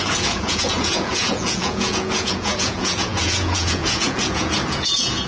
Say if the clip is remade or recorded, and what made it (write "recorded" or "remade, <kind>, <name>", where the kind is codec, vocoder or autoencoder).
remade, vocoder, Vocos